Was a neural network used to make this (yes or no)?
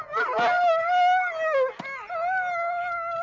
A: no